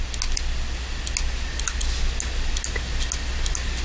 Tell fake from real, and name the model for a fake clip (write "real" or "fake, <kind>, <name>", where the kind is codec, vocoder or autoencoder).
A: real